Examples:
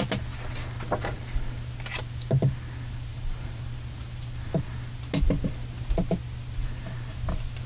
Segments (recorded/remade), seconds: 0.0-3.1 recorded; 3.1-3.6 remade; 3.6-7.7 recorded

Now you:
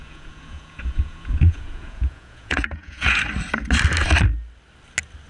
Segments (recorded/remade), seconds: 0.0-3.2 remade; 3.2-5.3 recorded